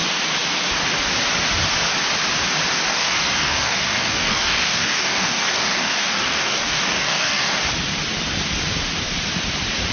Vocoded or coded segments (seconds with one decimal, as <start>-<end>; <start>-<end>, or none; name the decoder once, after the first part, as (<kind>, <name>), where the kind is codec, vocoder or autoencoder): 2.9-7.5 (codec, DAC)